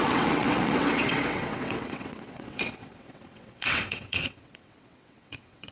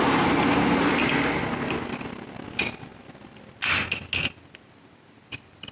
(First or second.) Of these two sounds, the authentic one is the second